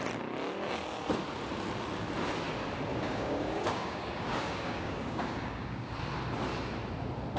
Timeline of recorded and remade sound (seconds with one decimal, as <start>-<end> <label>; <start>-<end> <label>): 0.0-2.9 recorded; 2.9-6.0 remade; 6.0-7.4 recorded